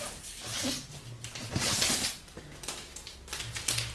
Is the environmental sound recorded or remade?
recorded